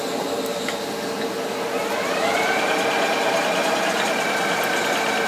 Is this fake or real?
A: real